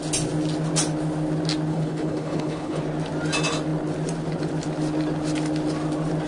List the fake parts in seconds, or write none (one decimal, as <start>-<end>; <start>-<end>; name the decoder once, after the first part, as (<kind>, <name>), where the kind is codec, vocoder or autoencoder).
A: 1.7-2.8 (codec, HILCodec)